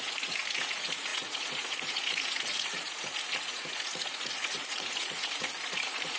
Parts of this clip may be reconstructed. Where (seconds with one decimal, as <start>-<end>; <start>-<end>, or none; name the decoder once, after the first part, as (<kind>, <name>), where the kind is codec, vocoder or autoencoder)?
0.0-6.2 (vocoder, Vocos)